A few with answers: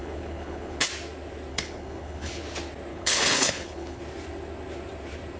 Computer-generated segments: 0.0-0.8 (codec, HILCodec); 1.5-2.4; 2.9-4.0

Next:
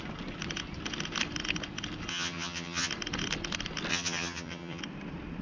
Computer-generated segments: 2.1-2.9 (vocoder, HiFi-GAN); 3.9-4.8

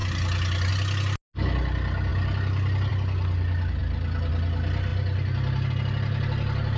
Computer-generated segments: none

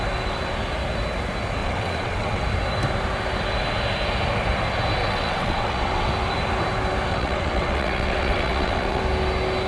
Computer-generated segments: 1.6-2.4 (vocoder, WaveNeXt); 5.0-6.1; 7.1-9.0